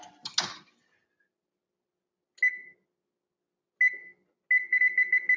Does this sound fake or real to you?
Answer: real